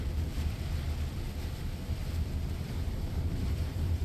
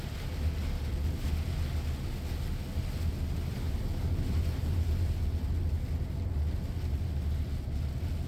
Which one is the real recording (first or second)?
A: second